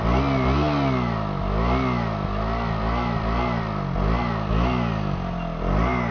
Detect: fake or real real